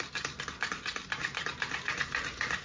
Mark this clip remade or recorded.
recorded